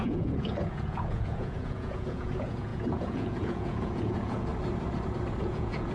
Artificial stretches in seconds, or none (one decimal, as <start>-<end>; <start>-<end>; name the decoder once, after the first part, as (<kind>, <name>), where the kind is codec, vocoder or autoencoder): 0.0-4.5 (vocoder, Vocos); 5.4-5.9